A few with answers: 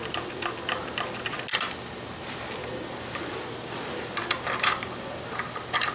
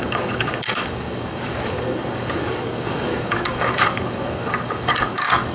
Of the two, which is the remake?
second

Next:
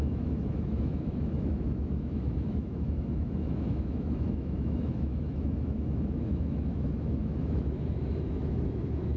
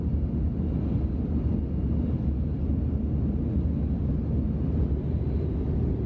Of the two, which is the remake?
first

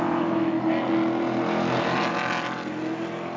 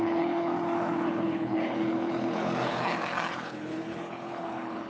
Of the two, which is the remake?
second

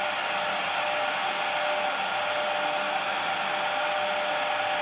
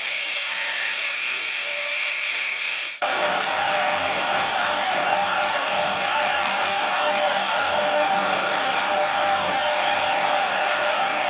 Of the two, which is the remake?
second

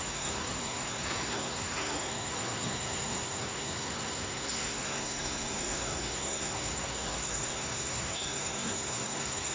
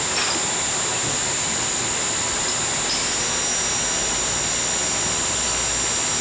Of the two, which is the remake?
first